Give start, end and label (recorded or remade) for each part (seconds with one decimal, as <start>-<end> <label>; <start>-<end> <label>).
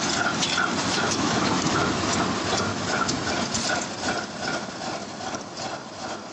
0.0-0.8 recorded; 0.8-2.2 remade; 2.2-2.7 recorded; 2.7-3.3 remade; 3.3-6.3 recorded